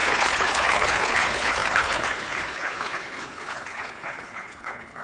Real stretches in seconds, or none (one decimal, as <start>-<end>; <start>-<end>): none